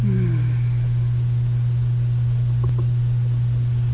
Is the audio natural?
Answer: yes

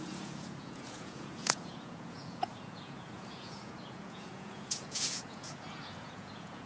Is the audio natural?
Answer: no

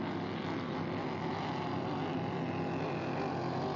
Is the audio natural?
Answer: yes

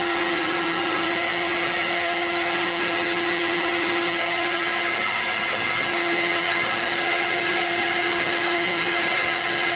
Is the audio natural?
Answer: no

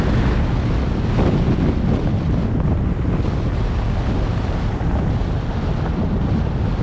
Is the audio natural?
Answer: yes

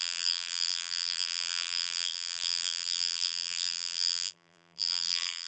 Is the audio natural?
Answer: no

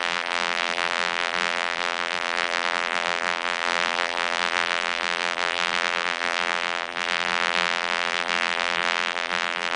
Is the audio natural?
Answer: no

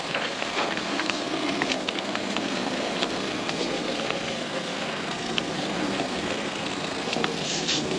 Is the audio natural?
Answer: no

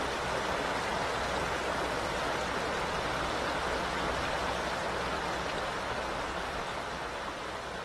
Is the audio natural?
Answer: yes